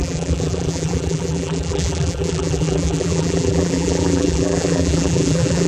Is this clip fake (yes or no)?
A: yes